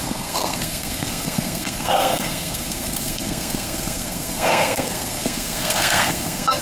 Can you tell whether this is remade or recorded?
remade